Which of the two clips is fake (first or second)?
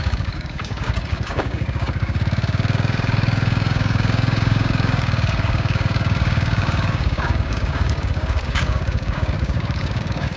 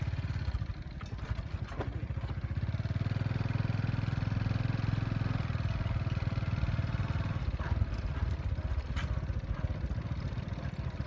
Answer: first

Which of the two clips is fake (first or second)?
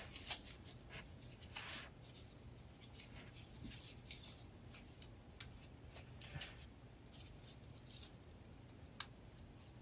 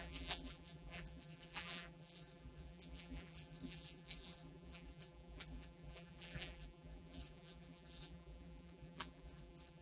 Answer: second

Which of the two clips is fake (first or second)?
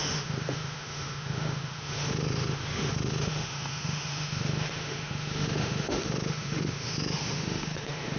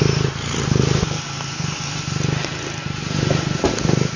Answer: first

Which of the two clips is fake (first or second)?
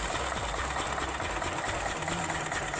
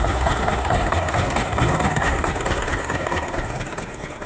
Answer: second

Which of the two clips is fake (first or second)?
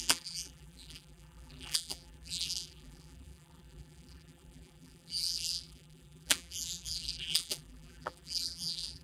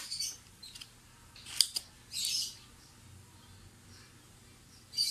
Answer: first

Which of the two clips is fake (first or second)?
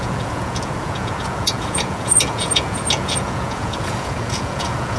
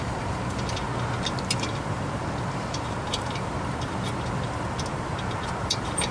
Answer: first